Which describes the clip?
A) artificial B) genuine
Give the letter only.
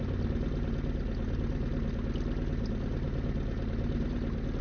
B